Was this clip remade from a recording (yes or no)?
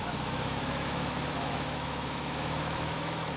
yes